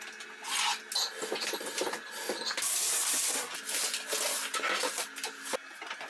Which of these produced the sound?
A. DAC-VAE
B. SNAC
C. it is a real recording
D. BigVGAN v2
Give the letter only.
C